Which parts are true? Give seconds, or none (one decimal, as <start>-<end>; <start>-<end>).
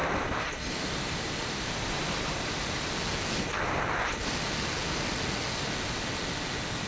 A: 2.9-6.9